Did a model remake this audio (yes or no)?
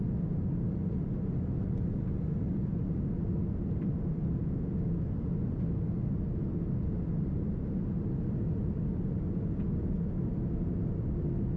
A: no